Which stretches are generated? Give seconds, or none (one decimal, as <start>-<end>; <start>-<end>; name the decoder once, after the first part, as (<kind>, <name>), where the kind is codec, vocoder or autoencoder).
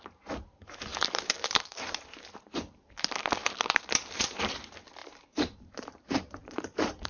0.9-4.6 (vocoder, BigVGAN v2); 5.0-7.1